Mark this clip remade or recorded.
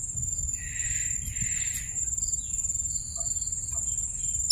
recorded